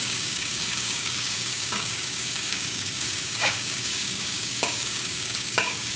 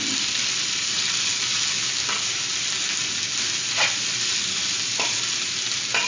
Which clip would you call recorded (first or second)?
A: second